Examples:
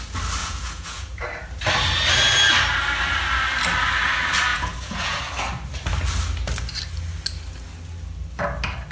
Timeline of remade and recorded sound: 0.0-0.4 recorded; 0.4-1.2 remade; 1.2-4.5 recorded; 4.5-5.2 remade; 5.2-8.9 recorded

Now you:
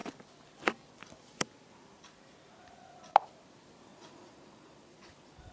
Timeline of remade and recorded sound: 0.0-3.9 recorded; 3.9-5.5 remade